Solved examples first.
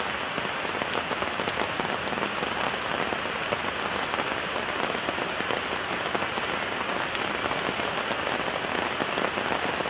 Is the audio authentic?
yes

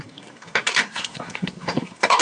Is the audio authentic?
no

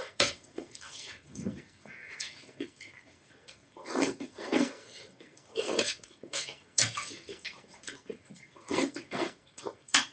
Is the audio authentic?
no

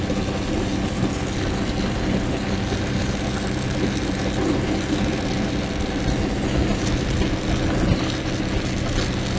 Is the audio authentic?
yes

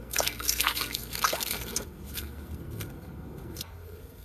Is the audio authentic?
no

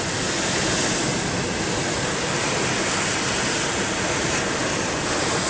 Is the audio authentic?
yes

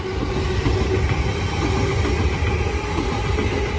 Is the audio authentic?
yes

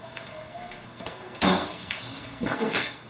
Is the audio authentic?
no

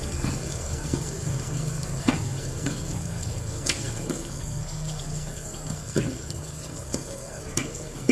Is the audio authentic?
no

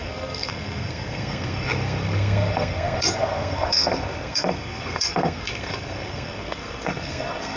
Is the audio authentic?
no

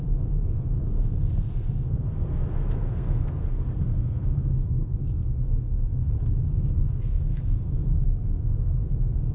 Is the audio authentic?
no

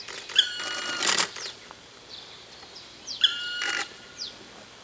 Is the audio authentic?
yes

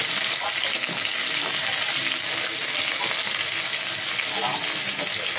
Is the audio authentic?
yes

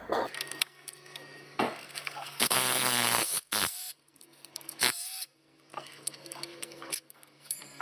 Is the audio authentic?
no